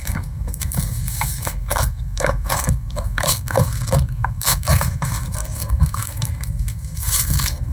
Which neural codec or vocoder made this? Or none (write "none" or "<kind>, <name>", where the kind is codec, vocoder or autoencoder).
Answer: codec, SNAC